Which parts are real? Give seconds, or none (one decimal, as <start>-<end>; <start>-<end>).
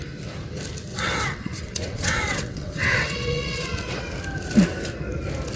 0.0-0.9; 4.0-5.6